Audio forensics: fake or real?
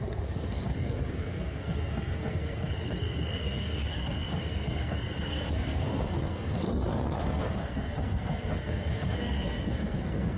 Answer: fake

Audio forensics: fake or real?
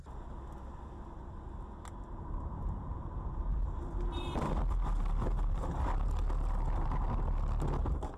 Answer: real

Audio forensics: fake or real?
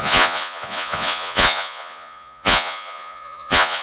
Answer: fake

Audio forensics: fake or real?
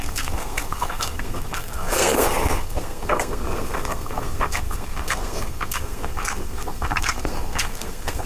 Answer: fake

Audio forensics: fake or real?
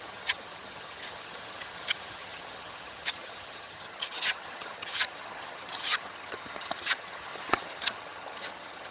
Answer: fake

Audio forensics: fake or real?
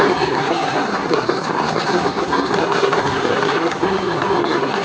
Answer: fake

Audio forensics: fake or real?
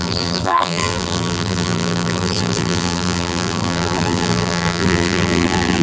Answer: fake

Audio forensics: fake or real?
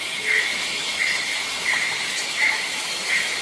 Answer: fake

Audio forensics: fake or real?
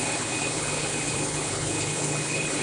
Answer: fake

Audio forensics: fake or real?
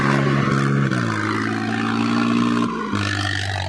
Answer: real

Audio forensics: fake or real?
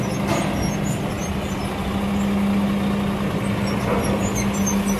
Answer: real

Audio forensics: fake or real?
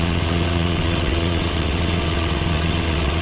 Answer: fake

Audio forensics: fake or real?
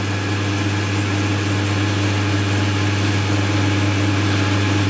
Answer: real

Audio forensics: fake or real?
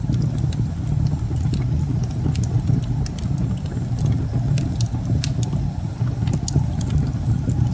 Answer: real